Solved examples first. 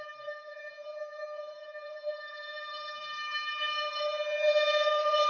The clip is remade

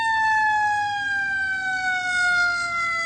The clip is recorded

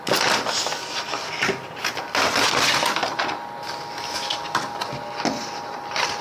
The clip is recorded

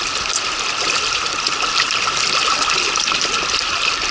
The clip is recorded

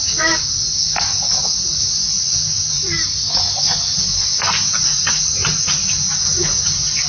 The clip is recorded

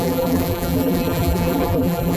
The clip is remade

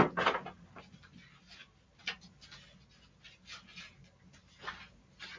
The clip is recorded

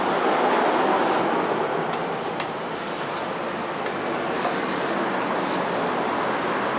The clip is recorded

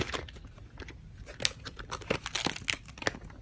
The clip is recorded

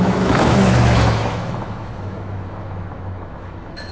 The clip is remade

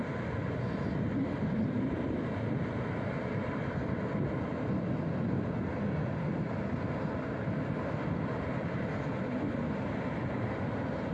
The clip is recorded